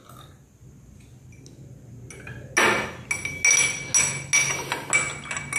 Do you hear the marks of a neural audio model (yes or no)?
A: no